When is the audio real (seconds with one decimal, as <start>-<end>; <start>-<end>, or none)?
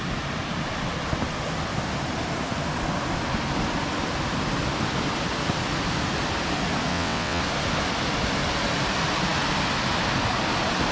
0.0-6.9; 7.4-10.9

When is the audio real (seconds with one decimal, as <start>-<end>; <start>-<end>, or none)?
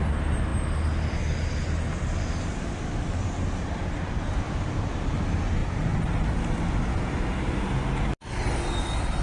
0.0-9.2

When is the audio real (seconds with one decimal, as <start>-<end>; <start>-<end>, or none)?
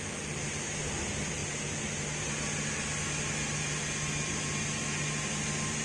0.0-5.8